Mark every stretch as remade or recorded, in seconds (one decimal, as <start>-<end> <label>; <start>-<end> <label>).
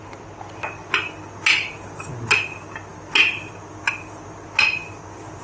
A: 0.0-5.4 recorded